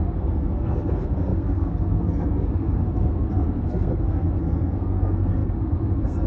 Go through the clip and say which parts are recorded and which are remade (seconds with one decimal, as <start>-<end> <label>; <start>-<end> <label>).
0.0-6.3 remade